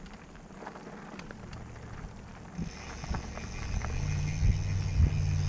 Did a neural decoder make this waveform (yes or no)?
no